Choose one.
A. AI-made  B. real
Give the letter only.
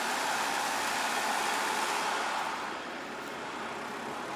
B